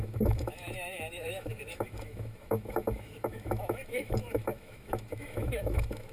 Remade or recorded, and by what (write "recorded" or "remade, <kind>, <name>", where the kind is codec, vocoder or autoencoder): remade, autoencoder, DAC-VAE